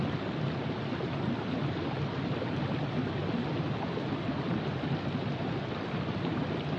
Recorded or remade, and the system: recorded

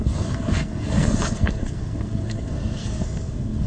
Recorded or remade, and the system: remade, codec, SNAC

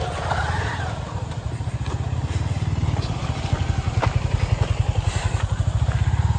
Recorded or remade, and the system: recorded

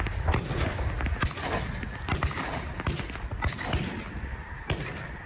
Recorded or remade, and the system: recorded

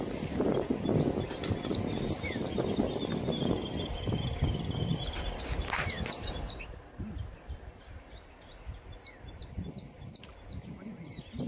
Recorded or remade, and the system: recorded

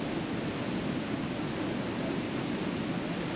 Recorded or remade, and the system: recorded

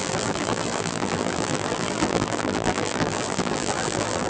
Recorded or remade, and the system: remade, vocoder, BigVGAN v2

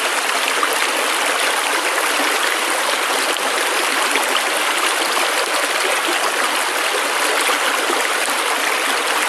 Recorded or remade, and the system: recorded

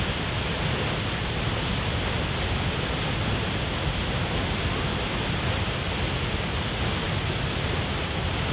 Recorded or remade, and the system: recorded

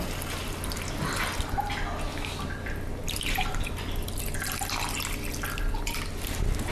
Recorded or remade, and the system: recorded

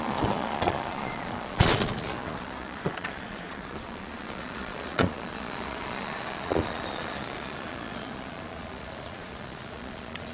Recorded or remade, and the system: remade, vocoder, Vocos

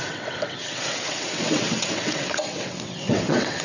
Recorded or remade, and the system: remade, vocoder, WaveNeXt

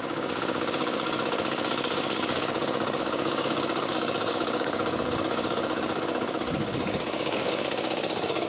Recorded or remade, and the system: remade, codec, DAC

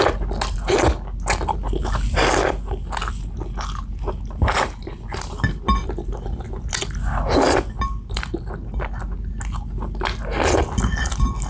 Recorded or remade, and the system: recorded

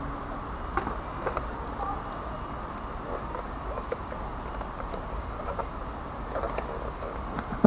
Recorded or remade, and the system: recorded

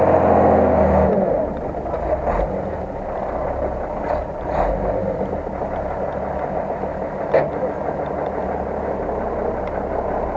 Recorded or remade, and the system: recorded